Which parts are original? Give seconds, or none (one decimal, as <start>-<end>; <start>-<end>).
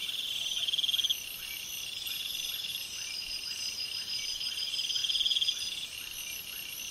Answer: 0.6-2.2; 4.6-6.9